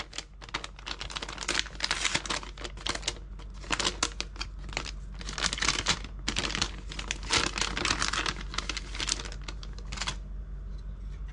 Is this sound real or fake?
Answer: real